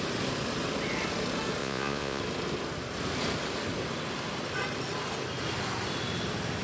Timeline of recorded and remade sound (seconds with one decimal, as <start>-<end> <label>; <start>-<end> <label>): 0.0-1.6 recorded; 1.6-2.2 remade; 2.2-6.6 recorded